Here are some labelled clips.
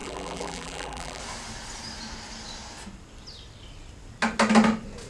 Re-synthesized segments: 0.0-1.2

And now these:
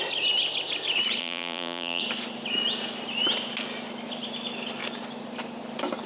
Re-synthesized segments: 1.2-2.0

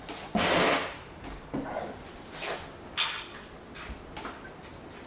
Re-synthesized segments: none

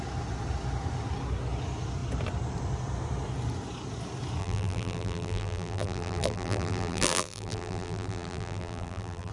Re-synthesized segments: 4.4-9.3

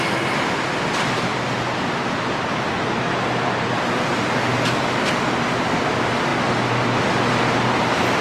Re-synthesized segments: none